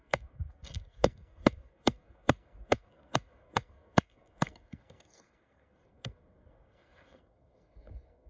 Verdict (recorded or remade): remade